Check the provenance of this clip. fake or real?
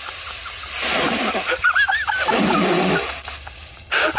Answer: real